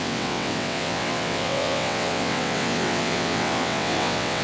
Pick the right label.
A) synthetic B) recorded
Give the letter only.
A